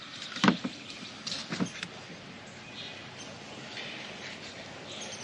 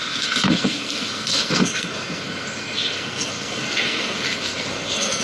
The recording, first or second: first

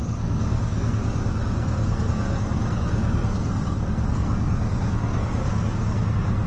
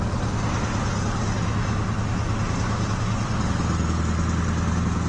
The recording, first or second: second